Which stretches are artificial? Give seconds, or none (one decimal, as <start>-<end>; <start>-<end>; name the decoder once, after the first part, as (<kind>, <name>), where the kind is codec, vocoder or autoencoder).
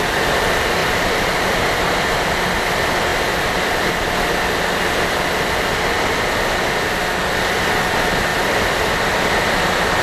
0.8-2.1 (vocoder, BigVGAN v2); 8.3-10.0